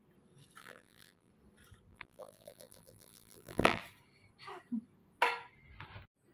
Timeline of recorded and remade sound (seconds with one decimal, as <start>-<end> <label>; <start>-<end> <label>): 0.0-0.6 recorded; 0.6-1.3 remade; 1.3-1.9 recorded; 1.9-3.8 remade; 3.8-6.3 recorded